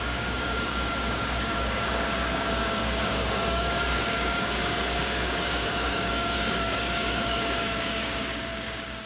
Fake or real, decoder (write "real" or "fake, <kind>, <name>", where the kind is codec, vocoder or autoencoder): fake, codec, DAC